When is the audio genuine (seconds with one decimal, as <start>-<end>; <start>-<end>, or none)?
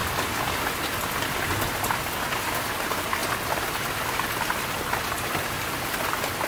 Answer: 0.0-6.5